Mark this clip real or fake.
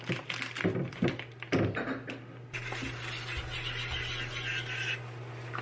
real